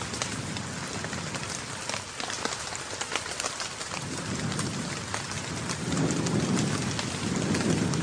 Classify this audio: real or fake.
real